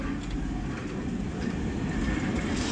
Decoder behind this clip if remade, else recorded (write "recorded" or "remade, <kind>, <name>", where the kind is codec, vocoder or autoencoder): recorded